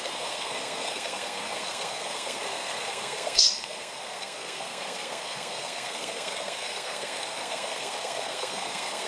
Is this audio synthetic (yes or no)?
yes